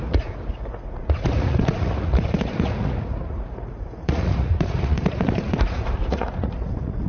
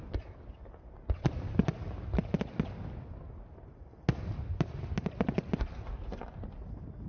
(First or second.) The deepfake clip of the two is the first